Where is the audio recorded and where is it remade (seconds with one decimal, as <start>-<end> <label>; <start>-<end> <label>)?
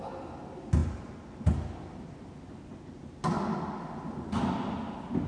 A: 0.0-5.3 recorded